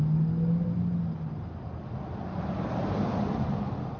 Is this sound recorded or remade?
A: recorded